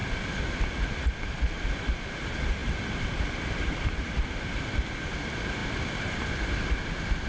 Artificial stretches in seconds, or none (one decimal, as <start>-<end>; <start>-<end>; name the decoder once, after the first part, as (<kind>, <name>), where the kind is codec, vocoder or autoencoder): 0.0-7.3 (vocoder, BigVGAN v2)